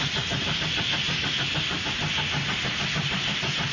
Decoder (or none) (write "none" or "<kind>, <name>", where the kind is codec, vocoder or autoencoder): none